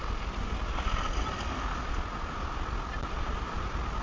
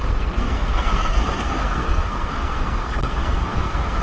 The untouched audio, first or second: first